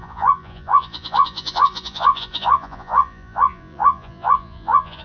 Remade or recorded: remade